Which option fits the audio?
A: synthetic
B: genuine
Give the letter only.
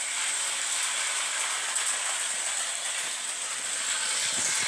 B